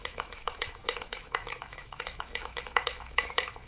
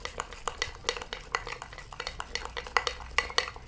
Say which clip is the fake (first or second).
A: first